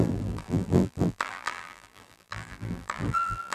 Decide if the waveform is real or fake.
fake